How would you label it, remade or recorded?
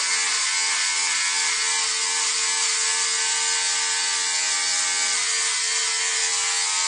recorded